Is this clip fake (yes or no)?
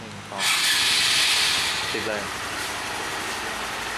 no